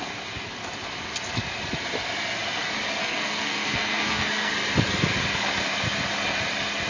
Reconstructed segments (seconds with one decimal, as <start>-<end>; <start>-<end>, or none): 3.0-4.5